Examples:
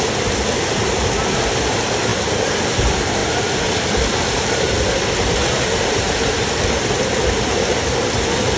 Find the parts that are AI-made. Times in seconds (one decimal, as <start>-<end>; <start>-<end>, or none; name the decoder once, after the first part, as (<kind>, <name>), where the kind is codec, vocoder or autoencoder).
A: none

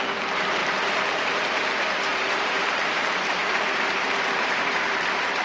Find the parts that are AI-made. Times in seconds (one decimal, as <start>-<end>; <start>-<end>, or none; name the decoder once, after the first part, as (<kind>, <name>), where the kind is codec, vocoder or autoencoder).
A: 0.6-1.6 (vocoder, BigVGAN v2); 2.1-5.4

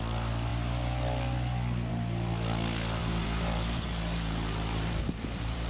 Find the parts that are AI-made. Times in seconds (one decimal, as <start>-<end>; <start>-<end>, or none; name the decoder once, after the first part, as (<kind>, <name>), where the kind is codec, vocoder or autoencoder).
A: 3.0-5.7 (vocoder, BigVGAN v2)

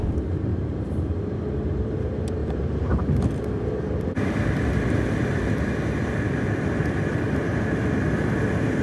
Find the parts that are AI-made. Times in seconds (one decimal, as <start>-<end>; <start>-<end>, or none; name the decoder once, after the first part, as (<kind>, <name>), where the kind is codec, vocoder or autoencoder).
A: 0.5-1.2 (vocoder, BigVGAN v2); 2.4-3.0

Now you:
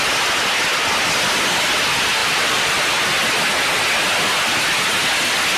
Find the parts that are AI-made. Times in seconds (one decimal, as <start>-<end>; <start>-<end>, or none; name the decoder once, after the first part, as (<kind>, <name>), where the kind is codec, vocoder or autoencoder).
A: 2.2-2.7 (vocoder, BigVGAN v2)

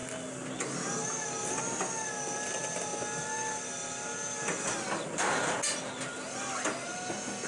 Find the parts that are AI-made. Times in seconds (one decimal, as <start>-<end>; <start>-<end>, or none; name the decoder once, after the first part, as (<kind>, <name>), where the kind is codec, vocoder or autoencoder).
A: none

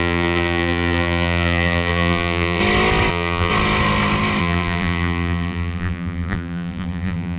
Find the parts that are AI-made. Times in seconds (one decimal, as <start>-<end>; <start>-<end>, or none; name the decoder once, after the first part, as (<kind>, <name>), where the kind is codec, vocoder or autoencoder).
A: 0.0-2.6 (vocoder, BigVGAN v2); 3.1-3.5; 4.4-7.4